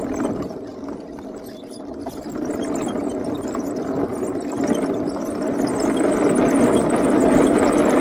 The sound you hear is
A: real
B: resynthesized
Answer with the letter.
A